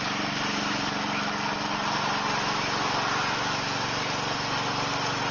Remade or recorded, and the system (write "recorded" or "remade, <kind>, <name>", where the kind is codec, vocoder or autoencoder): recorded